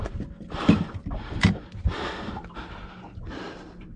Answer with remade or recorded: recorded